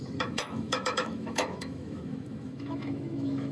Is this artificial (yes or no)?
yes